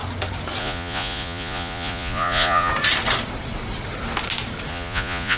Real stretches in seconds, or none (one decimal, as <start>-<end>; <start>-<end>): 0.0-0.6; 2.7-4.7